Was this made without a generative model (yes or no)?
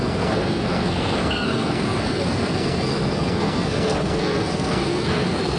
no